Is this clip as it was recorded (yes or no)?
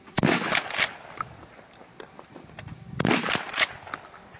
no